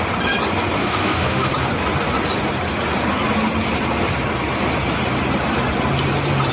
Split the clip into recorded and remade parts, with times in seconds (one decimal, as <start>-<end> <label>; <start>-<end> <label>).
0.0-0.8 recorded; 0.8-1.5 remade; 1.5-6.5 recorded